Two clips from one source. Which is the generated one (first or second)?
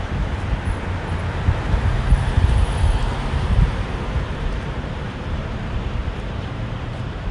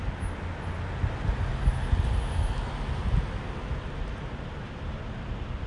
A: first